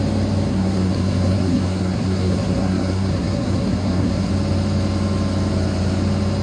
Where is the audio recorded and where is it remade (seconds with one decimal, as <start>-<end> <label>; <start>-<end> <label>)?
0.0-0.5 recorded; 0.5-4.3 remade; 4.3-6.4 recorded